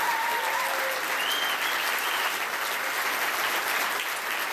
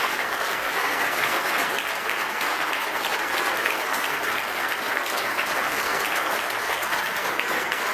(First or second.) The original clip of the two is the first